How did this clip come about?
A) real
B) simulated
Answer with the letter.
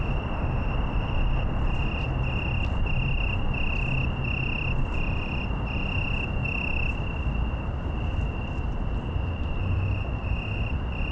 A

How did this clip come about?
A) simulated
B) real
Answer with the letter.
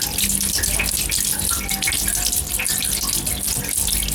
B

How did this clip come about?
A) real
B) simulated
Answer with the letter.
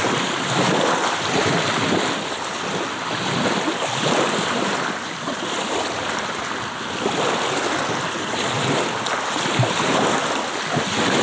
A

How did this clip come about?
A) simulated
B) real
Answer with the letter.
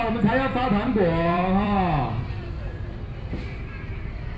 A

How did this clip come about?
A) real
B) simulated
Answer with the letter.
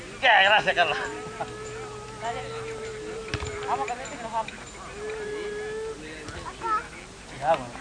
A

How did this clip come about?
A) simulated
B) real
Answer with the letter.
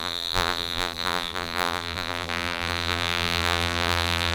A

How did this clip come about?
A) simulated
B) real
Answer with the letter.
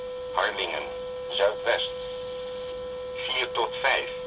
B